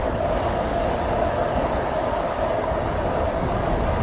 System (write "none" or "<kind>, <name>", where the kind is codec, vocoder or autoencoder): codec, DAC